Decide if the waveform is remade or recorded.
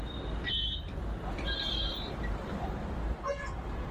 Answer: recorded